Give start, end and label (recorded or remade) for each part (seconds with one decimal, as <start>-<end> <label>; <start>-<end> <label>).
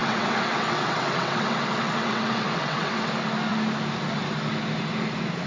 0.0-3.1 remade; 3.1-5.5 recorded